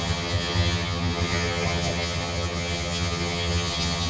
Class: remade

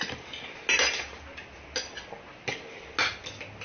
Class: recorded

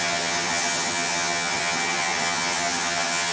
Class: remade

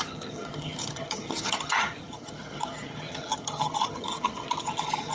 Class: remade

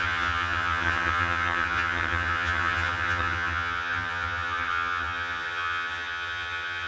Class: remade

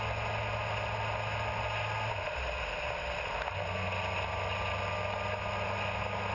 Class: recorded